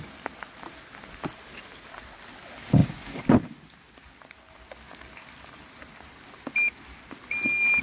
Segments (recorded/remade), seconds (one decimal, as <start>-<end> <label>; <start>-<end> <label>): 0.0-7.8 recorded